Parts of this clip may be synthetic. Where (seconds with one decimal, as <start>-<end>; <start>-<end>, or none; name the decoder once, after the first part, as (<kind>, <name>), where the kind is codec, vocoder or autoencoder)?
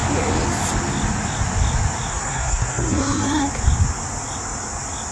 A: 2.1-3.5 (codec, SNAC)